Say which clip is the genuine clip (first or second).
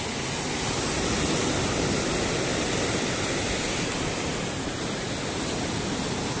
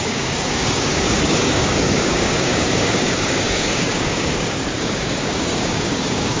first